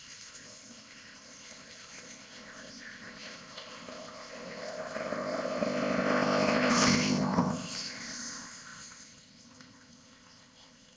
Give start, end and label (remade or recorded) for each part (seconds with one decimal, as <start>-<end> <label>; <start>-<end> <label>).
0.0-11.0 remade